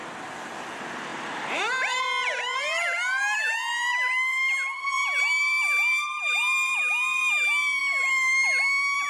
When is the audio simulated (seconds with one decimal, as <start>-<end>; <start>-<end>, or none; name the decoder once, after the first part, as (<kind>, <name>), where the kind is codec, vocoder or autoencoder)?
0.7-9.1 (vocoder, BigVGAN v2)